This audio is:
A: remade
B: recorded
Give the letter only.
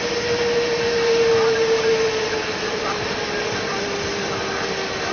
B